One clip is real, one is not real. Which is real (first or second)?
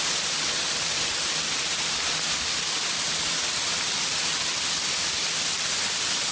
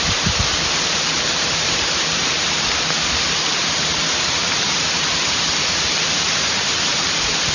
first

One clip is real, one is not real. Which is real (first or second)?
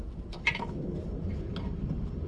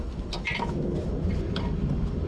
second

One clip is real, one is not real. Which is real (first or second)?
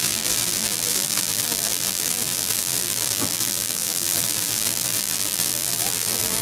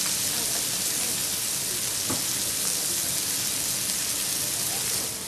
second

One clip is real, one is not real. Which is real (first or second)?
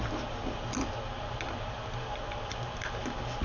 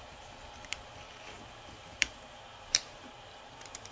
first